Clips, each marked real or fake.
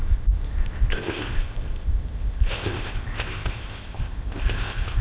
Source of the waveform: fake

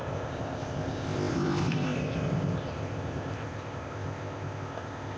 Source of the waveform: fake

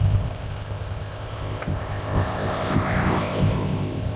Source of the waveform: fake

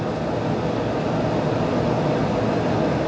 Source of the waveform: real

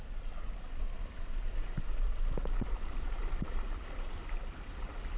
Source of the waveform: real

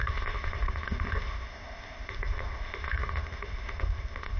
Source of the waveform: fake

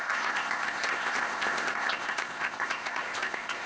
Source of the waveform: fake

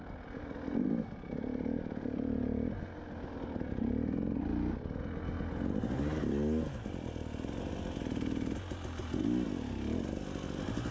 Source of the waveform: real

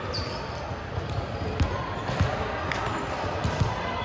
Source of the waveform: real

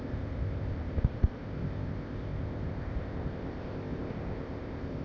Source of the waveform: fake